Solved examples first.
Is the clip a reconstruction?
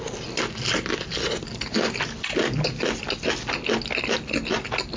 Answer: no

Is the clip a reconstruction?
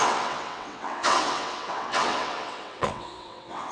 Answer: yes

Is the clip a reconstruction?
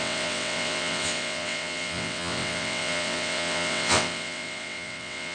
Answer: yes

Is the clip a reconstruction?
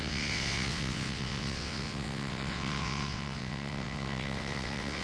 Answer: yes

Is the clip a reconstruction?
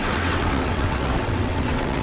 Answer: yes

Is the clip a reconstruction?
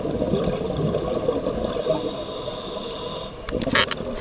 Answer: no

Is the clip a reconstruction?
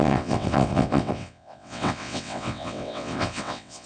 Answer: yes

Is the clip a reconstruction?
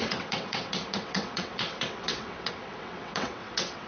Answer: yes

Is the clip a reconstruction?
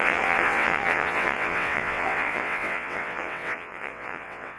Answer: yes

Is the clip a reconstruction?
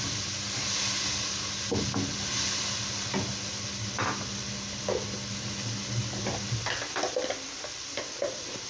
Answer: no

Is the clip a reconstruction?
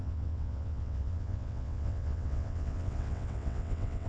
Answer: yes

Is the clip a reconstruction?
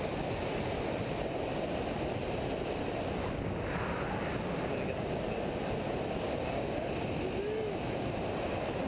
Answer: no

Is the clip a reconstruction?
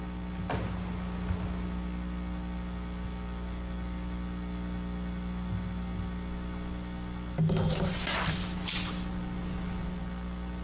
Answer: no